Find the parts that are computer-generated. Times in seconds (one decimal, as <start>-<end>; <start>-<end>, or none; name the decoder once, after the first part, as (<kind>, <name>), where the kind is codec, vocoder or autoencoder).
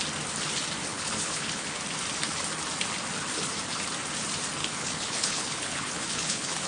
0.9-1.8 (codec, HILCodec); 4.6-6.7